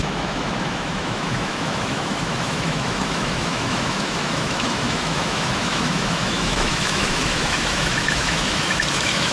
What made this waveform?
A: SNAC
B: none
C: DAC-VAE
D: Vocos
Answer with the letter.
C